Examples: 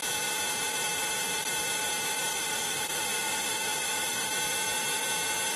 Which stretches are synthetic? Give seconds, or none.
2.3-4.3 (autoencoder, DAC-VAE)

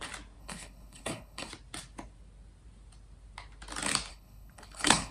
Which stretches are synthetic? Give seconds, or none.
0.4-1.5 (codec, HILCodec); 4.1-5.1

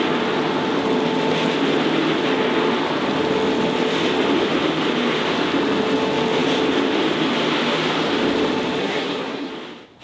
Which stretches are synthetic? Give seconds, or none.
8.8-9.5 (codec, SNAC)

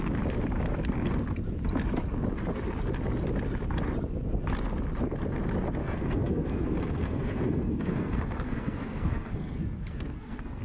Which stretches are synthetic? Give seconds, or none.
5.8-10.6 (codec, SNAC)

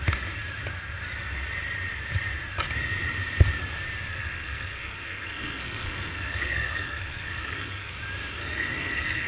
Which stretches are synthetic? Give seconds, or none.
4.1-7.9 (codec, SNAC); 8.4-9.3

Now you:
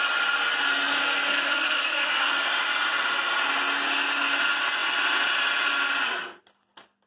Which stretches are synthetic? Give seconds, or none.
1.0-2.3 (codec, SNAC)

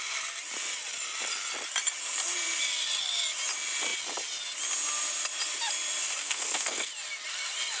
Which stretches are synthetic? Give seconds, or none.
6.2-6.9 (codec, SNAC)